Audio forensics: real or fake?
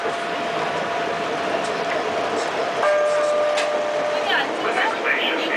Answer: real